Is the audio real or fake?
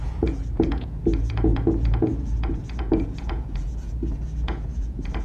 fake